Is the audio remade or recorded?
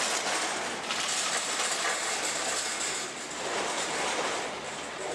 recorded